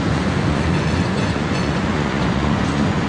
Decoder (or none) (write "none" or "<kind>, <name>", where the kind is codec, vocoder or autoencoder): vocoder, Vocos